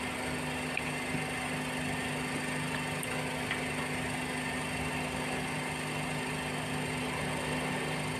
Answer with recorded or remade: recorded